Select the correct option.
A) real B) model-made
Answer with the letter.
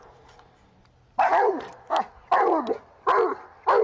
A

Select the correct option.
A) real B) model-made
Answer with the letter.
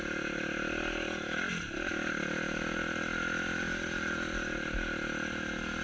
A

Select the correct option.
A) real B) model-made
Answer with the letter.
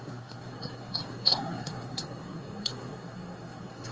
B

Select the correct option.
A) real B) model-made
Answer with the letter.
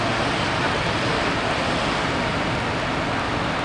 A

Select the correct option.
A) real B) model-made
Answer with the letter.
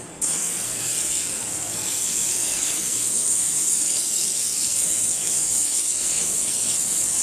B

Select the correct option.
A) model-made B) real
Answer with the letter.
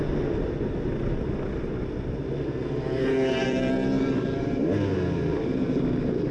B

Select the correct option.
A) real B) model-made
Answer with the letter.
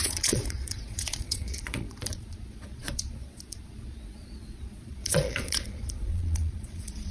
B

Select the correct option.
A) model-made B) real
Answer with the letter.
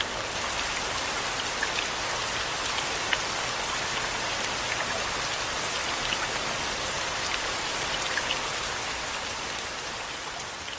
B